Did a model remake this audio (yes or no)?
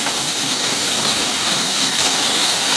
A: yes